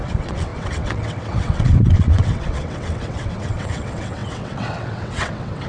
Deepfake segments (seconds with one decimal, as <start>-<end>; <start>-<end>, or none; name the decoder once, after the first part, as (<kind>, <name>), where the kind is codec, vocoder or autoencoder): 0.0-5.7 (vocoder, WaveNeXt)